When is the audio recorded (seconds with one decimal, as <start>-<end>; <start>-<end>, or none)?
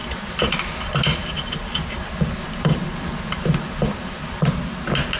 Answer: 0.5-1.2; 4.3-5.2